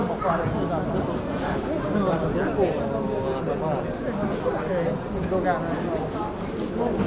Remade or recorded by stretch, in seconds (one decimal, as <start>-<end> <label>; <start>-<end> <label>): 0.0-7.1 recorded